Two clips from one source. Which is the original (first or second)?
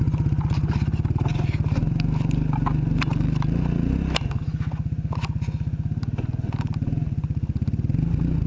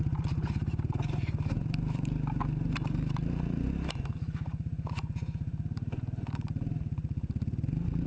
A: first